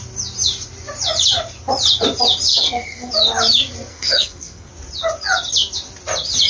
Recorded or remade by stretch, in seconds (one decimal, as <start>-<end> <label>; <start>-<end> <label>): 0.0-2.5 recorded; 2.5-3.1 remade; 3.1-3.9 recorded; 3.9-4.7 remade; 4.7-6.5 recorded